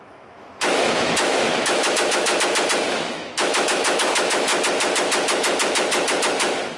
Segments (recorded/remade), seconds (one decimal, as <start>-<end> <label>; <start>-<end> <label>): 0.0-2.3 remade; 2.3-2.9 recorded; 2.9-4.5 remade; 4.5-6.8 recorded